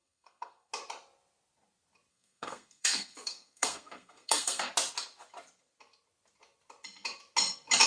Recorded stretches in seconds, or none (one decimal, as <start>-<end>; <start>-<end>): 0.7-2.1; 4.7-7.9